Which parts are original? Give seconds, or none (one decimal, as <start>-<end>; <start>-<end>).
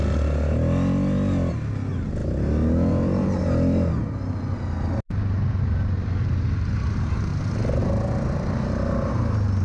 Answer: 0.0-9.6